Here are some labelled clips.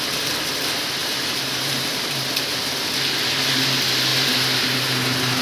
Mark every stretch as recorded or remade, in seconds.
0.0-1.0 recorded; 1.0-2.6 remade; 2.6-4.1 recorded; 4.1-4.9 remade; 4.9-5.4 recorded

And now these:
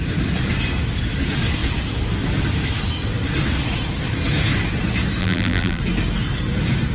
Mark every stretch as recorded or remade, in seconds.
0.0-5.2 recorded; 5.2-5.8 remade; 5.8-6.9 recorded

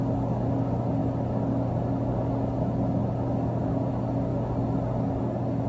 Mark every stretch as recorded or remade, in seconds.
0.0-5.7 recorded

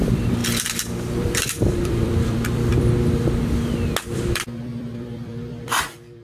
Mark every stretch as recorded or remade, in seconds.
0.0-0.4 remade; 0.4-1.2 recorded; 1.2-2.7 remade; 2.7-4.1 recorded; 4.1-6.2 remade

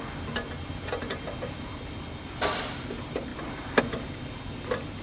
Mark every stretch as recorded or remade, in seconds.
0.0-5.0 recorded